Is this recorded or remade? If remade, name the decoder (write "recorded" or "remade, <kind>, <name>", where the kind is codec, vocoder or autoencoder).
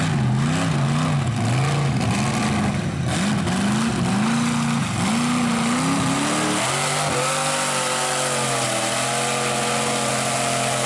recorded